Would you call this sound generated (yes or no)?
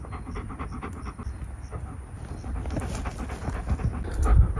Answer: no